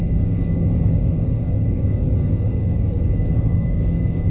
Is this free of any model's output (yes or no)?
no